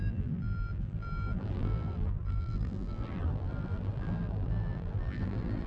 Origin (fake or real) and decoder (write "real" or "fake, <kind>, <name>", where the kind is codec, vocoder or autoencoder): fake, vocoder, BigVGAN v2